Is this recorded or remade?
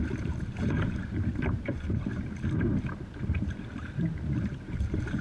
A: remade